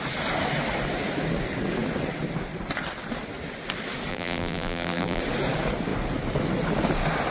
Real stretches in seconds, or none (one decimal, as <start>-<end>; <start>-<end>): 0.0-4.1; 5.2-7.3